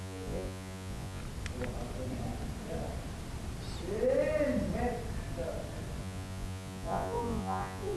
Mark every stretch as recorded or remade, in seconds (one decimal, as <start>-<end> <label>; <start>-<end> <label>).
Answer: 0.0-1.2 remade; 1.2-6.0 recorded; 6.0-8.0 remade